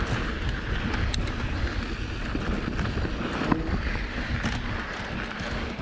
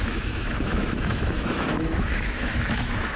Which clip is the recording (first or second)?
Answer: first